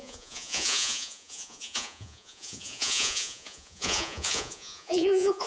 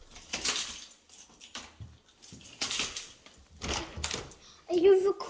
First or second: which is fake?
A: first